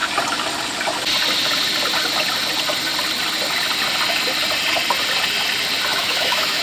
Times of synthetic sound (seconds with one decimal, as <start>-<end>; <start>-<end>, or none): 5.9-6.6